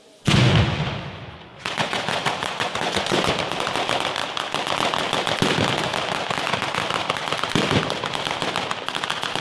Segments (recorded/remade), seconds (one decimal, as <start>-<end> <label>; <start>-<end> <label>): 0.0-3.3 remade; 3.3-9.4 recorded